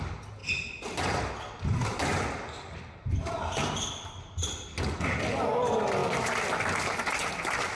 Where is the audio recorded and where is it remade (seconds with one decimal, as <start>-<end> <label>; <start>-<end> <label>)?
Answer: 0.0-2.1 recorded; 2.1-2.8 remade; 2.8-6.0 recorded; 6.0-6.8 remade; 6.8-7.7 recorded